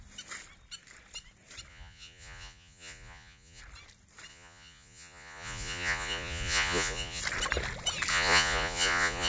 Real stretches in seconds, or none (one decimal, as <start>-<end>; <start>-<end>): 0.0-1.7; 3.6-4.3; 7.2-8.1